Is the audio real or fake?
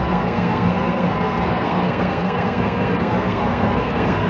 fake